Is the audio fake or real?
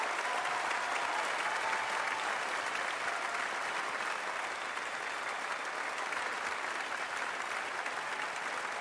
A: real